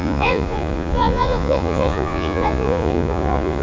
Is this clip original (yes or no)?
no